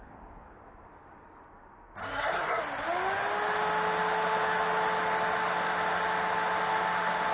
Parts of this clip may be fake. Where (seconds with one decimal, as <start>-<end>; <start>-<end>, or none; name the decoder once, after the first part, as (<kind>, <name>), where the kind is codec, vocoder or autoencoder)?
2.0-2.6 (codec, SNAC)